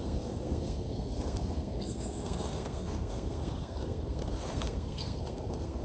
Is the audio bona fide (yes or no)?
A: no